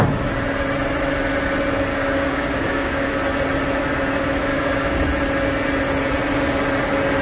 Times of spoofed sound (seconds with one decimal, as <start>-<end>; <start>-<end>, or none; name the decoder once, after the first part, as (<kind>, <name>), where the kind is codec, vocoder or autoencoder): 1.9-3.1 (codec, DAC); 4.5-5.0